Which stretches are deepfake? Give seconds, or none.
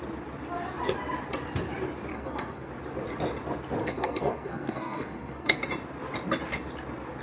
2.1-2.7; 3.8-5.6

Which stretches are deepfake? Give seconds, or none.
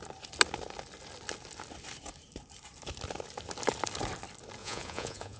4.6-5.4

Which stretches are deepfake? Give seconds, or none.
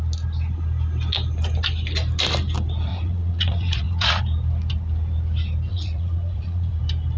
2.9-4.2; 5.7-6.8